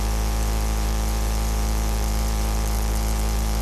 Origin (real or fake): fake